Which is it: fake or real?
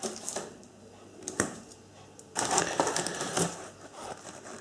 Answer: real